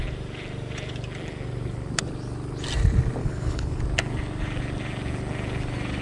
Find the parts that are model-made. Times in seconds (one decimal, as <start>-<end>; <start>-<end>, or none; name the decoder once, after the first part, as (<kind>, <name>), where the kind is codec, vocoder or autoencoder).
3.2-3.8 (codec, HILCodec)